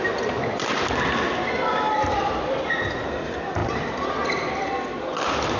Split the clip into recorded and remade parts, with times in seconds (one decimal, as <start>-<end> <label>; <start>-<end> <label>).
0.0-5.6 recorded